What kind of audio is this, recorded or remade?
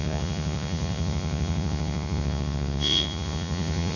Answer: remade